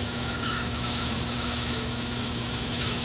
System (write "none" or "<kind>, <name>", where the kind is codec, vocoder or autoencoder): autoencoder, DAC-VAE